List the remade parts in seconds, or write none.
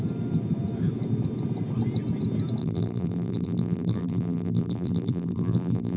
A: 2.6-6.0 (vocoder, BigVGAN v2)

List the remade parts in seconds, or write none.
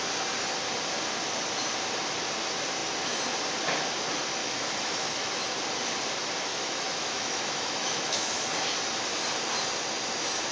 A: 4.4-5.4 (autoencoder, DAC-VAE); 6.5-8.5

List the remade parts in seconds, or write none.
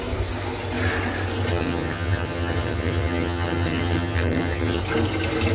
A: 1.5-4.8 (vocoder, HiFi-GAN)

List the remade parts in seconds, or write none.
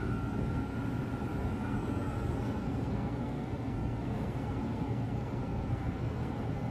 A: 0.0-0.7 (codec, SNAC); 1.4-6.7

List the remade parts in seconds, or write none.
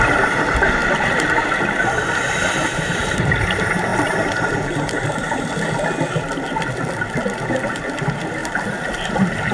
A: 0.0-0.8 (vocoder, BigVGAN v2); 2.4-5.5; 7.6-8.4; 9.1-9.5